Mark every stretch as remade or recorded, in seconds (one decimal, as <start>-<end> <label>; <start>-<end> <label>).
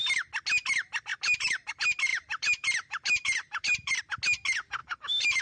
0.0-1.1 recorded; 1.1-1.7 remade; 1.7-2.1 recorded; 2.1-4.0 remade; 4.0-4.8 recorded; 4.8-5.4 remade